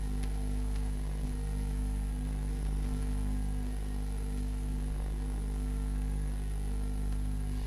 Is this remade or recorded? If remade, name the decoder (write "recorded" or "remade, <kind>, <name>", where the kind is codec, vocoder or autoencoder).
remade, codec, SNAC